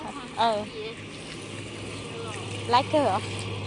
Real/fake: real